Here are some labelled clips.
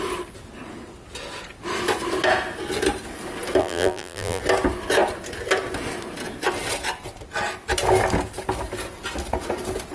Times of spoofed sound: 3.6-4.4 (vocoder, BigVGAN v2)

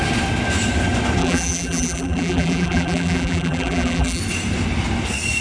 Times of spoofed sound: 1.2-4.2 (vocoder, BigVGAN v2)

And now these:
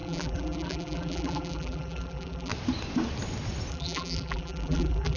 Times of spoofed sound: 0.0-2.5 (vocoder, BigVGAN v2); 3.7-5.2

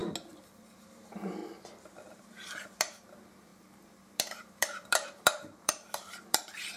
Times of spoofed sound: 0.6-1.4 (vocoder, BigVGAN v2); 2.0-6.8